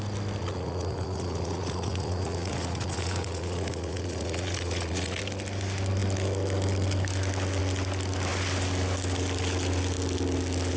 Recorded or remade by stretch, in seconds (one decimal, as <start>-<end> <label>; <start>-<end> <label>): 0.0-0.4 recorded; 0.4-5.2 remade; 5.2-10.8 recorded